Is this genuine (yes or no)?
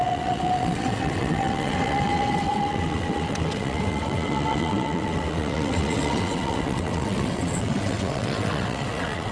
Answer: no